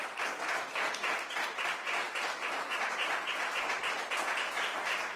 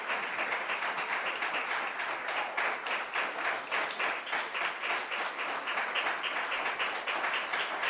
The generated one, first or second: second